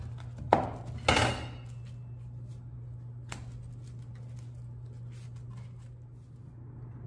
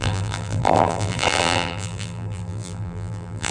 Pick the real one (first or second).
first